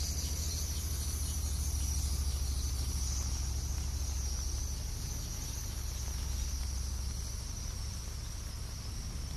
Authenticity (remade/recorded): recorded